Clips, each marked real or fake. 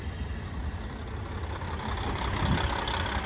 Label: real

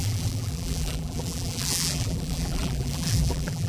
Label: fake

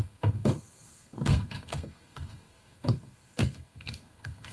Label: fake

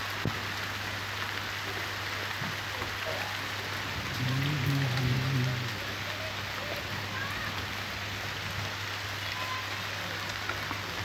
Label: real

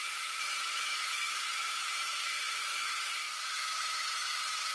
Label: fake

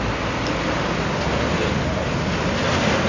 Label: real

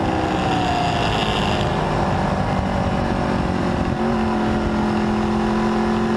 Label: real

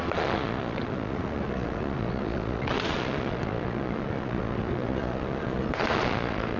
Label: fake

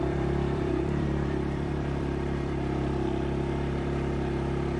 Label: fake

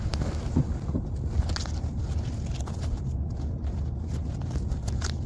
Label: real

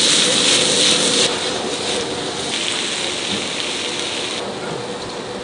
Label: real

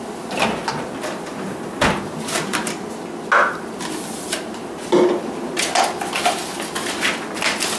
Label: real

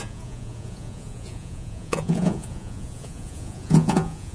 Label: fake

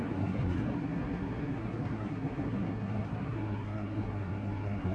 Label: fake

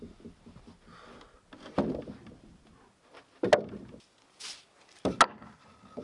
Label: real